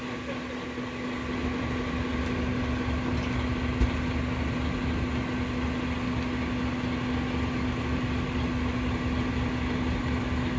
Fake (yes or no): no